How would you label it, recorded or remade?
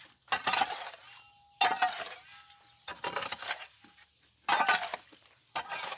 recorded